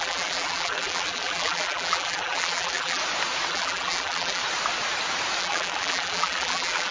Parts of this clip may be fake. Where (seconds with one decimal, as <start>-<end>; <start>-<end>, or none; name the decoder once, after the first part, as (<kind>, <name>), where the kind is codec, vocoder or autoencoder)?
0.0-3.0 (vocoder, BigVGAN v2); 3.5-4.4; 5.4-6.9